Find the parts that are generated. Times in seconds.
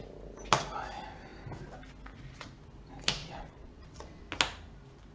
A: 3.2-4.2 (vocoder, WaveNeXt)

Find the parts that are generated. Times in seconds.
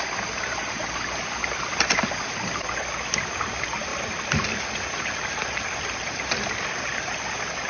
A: none